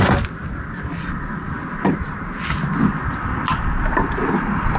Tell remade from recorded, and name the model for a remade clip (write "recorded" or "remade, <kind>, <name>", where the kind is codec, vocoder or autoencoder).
recorded